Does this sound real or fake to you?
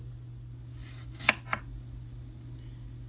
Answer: real